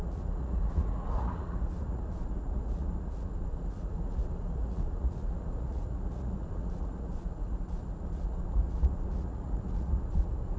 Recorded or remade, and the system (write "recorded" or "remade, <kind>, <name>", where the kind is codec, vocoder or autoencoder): remade, vocoder, Vocos